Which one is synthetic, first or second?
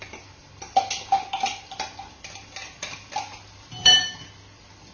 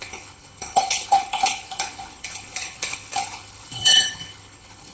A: second